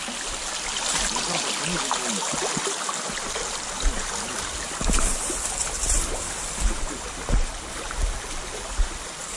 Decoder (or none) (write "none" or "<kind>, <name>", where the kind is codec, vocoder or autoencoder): none